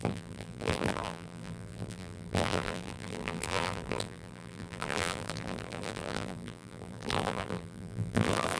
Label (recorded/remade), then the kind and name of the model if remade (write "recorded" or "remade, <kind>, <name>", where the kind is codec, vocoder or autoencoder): remade, vocoder, BigVGAN v2